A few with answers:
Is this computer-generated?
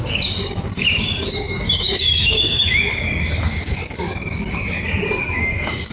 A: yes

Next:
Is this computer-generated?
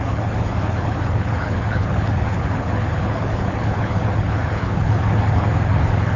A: yes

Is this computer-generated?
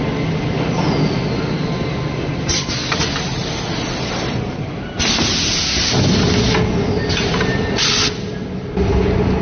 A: no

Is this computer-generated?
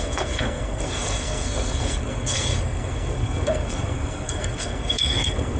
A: yes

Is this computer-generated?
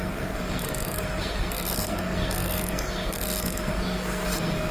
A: yes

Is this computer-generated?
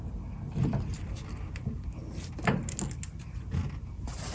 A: no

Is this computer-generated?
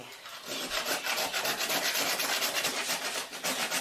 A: no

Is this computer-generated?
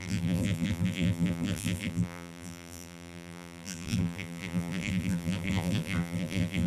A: yes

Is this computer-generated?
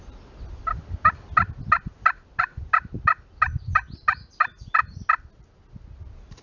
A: no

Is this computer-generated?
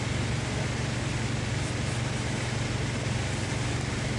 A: no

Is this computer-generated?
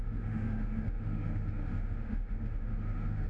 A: yes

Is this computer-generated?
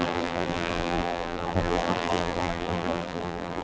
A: yes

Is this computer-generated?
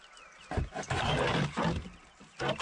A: no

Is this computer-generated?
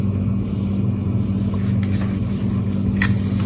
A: no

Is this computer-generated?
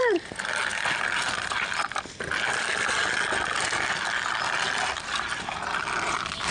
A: yes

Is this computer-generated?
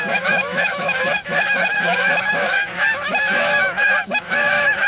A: yes